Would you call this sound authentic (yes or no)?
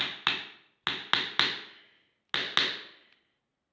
yes